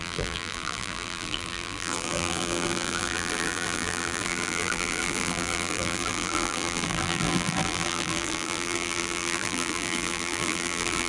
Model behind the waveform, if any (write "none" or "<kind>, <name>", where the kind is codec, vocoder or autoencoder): vocoder, BigVGAN v2